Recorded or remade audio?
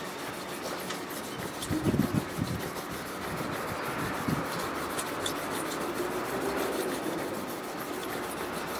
recorded